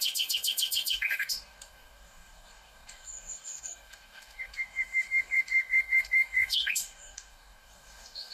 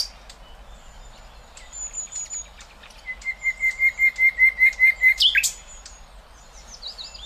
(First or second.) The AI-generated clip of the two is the first